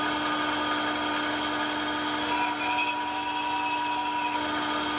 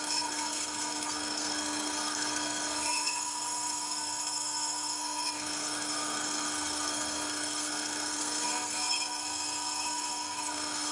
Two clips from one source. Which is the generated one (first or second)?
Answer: second